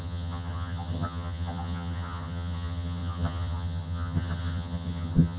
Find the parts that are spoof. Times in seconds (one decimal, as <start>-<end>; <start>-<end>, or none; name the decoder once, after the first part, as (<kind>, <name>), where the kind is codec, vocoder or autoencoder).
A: 0.0-5.4 (vocoder, HiFi-GAN)

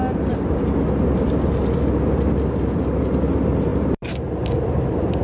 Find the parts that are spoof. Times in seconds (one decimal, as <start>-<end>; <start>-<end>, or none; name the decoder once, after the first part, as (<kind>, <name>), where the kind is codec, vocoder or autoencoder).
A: 3.7-5.2 (vocoder, BigVGAN v2)